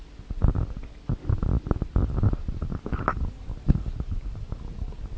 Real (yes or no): yes